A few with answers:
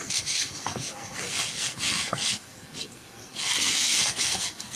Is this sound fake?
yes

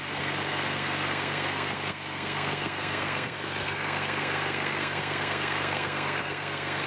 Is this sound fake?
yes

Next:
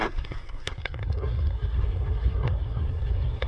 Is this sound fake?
yes